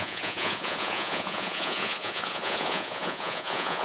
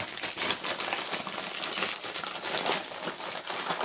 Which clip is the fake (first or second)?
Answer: first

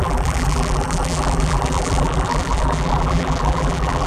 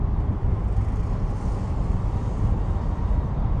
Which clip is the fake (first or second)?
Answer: first